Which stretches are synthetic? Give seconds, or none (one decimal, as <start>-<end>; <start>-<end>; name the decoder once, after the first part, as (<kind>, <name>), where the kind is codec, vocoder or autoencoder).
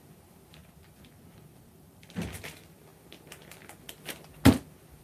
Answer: 0.6-2.4 (vocoder, BigVGAN v2)